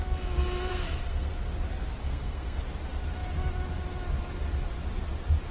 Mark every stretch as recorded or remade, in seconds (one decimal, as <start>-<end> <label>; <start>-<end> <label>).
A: 0.0-0.7 recorded; 0.7-1.3 remade; 1.3-2.0 recorded; 2.0-2.6 remade; 2.6-5.5 recorded